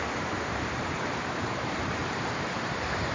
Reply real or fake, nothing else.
fake